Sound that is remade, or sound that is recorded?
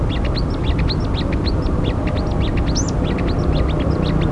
recorded